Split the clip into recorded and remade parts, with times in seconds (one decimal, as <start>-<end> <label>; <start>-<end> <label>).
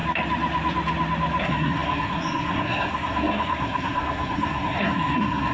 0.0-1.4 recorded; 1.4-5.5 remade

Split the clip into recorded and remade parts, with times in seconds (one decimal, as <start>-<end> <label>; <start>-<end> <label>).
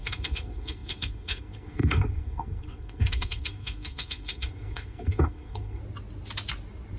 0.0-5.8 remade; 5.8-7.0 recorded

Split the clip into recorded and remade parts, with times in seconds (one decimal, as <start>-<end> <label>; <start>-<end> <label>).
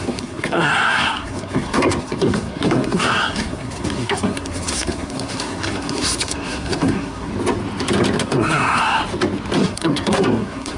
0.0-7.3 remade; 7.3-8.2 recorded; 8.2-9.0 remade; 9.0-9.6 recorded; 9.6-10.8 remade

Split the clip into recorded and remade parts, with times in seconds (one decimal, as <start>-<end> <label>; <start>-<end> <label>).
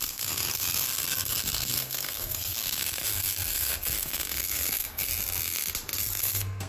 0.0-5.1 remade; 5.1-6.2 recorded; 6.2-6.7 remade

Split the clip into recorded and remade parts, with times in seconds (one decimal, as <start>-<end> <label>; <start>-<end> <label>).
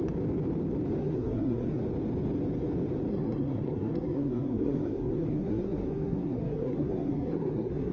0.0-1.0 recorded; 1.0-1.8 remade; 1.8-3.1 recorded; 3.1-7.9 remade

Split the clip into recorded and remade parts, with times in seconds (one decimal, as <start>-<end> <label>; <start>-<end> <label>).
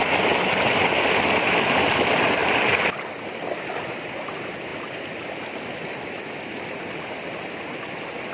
0.0-8.3 recorded